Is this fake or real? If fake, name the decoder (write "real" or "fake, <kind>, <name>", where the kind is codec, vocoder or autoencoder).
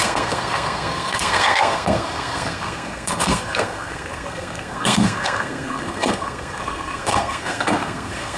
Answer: fake, codec, SNAC